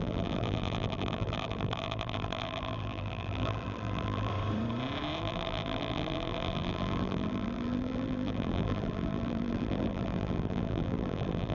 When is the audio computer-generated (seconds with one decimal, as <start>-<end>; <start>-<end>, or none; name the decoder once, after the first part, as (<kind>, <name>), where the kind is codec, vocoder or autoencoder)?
0.0-4.3 (vocoder, BigVGAN v2); 5.2-11.5